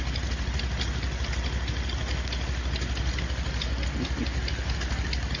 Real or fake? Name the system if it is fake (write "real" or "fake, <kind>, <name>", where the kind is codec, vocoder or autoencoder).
real